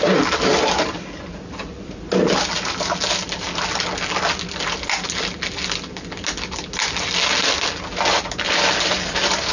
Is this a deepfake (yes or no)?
no